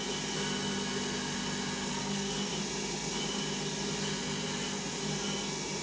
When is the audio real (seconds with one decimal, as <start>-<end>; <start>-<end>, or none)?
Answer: 0.0-1.9; 2.5-5.8

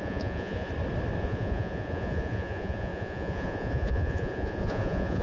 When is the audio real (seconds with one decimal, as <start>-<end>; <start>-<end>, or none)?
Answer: 0.7-1.2

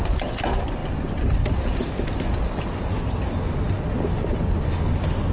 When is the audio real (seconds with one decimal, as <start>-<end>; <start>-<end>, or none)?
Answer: 0.0-5.3

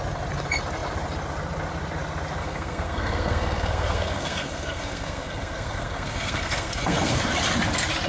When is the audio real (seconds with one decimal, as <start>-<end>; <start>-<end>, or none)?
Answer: 0.0-2.4; 7.2-8.1

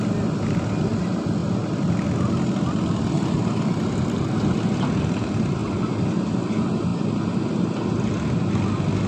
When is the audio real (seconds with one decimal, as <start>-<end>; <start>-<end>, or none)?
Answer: 0.0-9.1